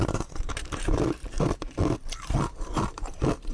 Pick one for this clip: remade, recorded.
remade